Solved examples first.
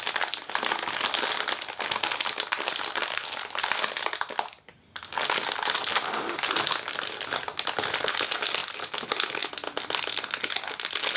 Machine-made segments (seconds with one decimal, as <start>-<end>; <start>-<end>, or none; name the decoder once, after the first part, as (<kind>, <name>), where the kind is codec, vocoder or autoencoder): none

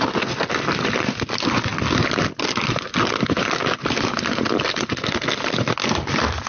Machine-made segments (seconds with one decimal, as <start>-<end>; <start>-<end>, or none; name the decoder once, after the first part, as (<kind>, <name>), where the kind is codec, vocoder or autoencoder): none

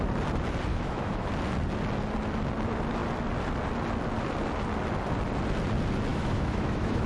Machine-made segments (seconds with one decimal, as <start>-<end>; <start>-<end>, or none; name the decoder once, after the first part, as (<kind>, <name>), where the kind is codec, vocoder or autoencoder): 0.7-1.3 (autoencoder, DAC-VAE); 6.1-7.1

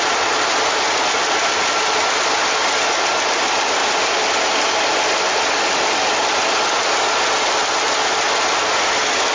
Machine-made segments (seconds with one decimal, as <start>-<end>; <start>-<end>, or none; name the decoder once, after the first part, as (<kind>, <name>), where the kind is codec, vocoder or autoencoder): none

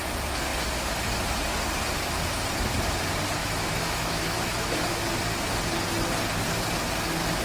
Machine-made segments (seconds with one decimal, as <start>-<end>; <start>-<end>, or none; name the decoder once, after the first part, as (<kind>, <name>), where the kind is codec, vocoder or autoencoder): 3.4-5.0 (autoencoder, DAC-VAE)